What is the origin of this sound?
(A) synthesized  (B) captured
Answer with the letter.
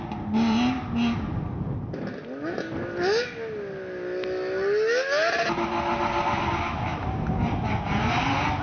B